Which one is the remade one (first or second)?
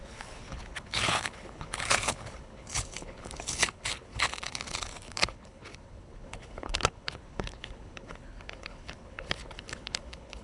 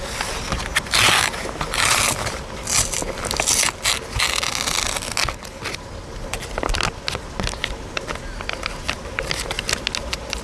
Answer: first